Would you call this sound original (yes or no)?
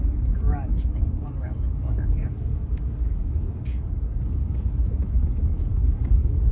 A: no